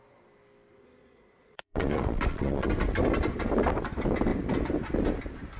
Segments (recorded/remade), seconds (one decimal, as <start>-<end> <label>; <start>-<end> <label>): 0.0-1.0 recorded; 1.0-2.7 remade; 2.7-5.6 recorded